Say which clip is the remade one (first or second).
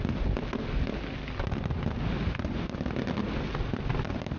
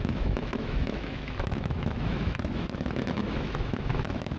second